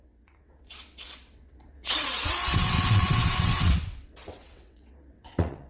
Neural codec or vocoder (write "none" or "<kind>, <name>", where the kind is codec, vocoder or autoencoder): vocoder, WaveNeXt